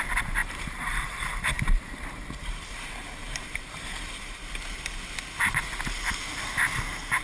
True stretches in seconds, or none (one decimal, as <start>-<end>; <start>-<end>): 0.0-0.4; 4.4-7.2